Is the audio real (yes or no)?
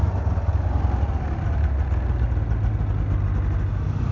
yes